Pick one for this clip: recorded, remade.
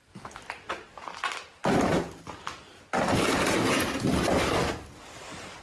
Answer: recorded